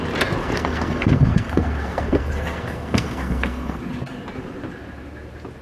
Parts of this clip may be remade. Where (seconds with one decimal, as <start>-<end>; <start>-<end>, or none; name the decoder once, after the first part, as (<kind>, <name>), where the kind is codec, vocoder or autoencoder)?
0.4-3.8 (codec, SNAC)